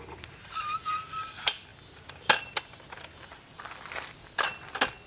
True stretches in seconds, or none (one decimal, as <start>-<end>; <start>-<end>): 0.0-5.1